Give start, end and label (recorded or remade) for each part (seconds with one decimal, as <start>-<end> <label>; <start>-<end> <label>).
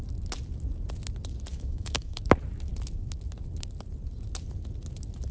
0.0-1.5 recorded; 1.5-2.2 remade; 2.2-5.3 recorded